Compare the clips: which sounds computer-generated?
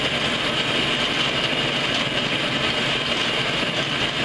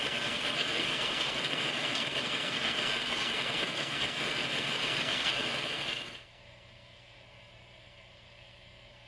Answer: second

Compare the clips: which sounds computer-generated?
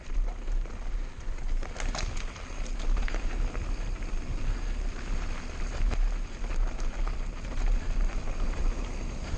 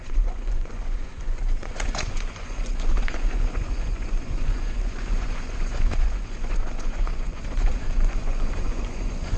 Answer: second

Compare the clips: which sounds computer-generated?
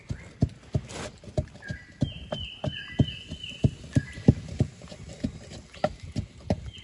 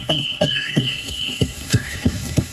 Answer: second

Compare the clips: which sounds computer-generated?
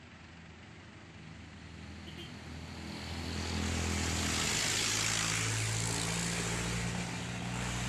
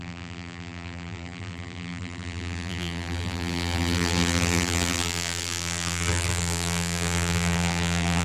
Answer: second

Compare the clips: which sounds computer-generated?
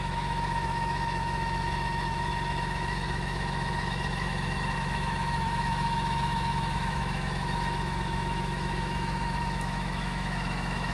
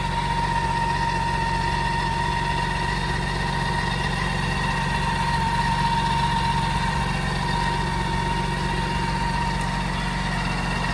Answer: first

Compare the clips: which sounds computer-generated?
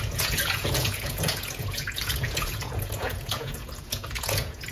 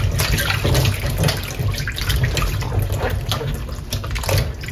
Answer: first